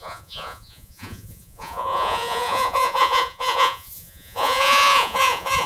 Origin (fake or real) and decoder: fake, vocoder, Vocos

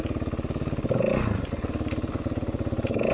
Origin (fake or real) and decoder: real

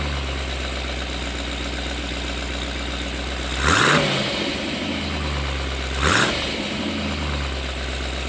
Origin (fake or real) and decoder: real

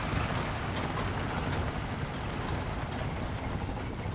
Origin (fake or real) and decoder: real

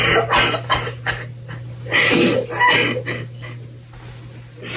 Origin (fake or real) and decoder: real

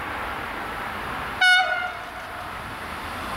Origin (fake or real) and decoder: real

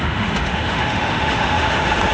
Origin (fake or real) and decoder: fake, autoencoder, DAC-VAE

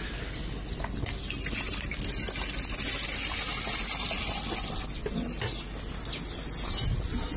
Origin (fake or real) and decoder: real